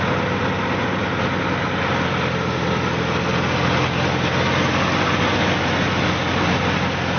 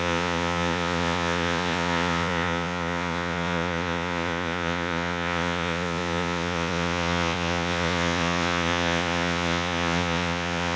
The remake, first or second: second